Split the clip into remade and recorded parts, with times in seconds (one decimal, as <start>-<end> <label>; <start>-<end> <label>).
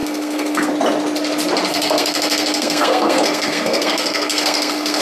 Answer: 0.0-0.7 remade; 0.7-1.7 recorded; 1.7-5.0 remade